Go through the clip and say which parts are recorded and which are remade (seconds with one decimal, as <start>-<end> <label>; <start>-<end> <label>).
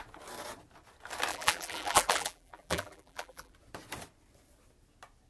0.0-1.3 recorded; 1.3-3.5 remade; 3.5-5.3 recorded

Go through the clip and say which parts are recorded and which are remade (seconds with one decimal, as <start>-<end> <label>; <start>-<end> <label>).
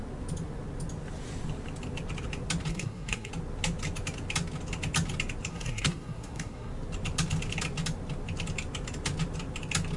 0.0-2.7 recorded; 2.7-3.3 remade; 3.3-5.5 recorded; 5.5-6.7 remade; 6.7-10.0 recorded